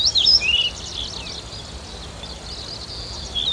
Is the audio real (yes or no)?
yes